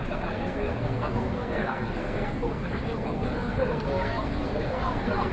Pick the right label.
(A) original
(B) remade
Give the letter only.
B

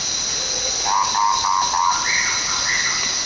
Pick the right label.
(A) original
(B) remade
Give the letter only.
A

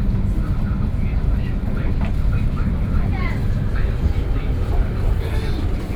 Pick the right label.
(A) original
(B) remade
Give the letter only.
A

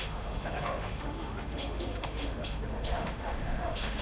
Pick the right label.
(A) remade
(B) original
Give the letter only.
A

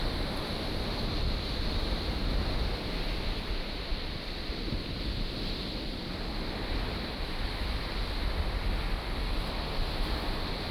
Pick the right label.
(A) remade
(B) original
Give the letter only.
B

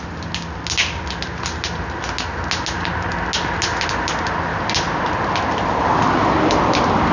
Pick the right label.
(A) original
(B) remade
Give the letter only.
A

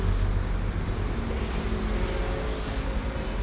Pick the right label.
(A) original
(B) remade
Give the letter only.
A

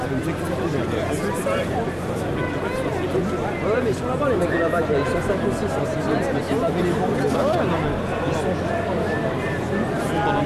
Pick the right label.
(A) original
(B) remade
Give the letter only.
A